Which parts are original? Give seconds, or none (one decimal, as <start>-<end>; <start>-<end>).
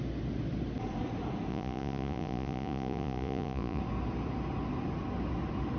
0.0-1.5; 3.8-5.8